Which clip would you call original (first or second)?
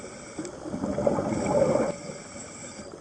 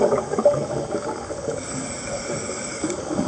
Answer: first